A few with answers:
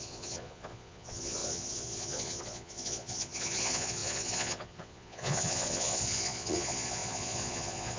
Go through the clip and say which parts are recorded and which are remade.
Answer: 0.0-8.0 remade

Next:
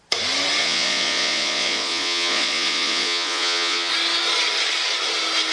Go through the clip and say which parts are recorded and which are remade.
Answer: 0.0-0.6 recorded; 0.6-3.9 remade; 3.9-5.5 recorded